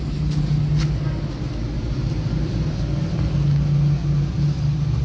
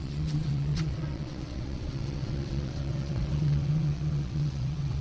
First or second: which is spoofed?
second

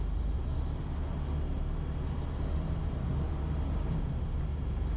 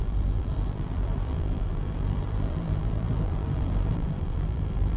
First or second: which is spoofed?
second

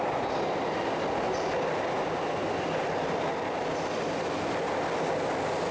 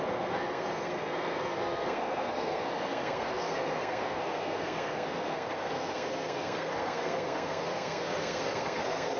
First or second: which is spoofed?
second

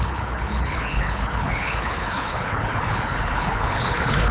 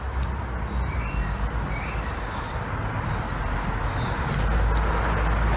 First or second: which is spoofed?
first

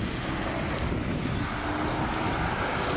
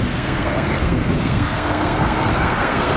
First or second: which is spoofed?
second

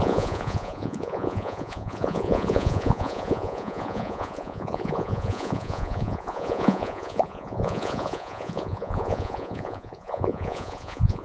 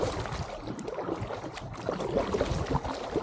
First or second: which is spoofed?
first